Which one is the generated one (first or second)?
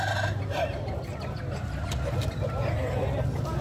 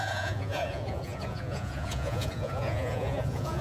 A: second